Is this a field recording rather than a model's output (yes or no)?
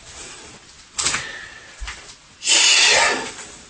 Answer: yes